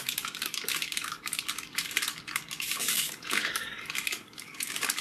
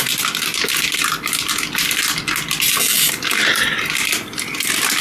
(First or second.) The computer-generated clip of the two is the first